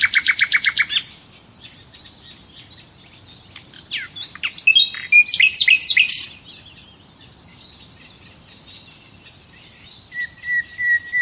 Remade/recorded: recorded